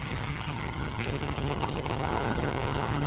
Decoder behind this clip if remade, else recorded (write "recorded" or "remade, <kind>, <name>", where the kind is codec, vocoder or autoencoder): remade, vocoder, HiFi-GAN